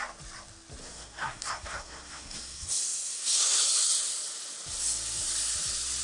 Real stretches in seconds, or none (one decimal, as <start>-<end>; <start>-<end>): 0.0-0.8; 3.6-6.0